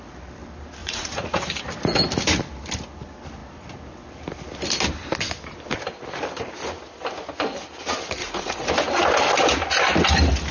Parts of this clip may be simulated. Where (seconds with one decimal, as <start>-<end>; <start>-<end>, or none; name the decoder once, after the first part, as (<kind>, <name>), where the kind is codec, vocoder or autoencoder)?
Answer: 0.8-1.4 (vocoder, Vocos); 8.2-8.7